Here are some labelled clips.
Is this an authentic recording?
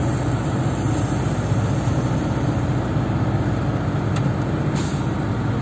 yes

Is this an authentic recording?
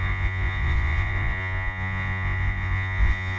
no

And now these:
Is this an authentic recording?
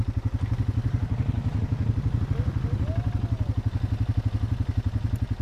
yes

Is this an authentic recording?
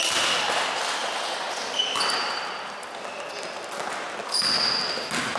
yes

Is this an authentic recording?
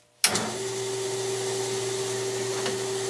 yes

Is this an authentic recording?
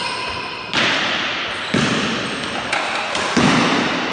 yes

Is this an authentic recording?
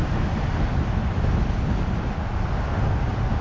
yes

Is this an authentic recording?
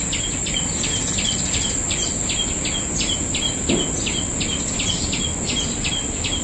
yes